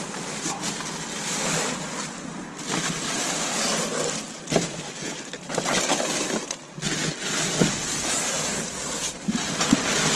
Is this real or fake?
real